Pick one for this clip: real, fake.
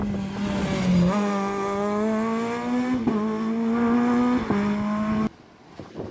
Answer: real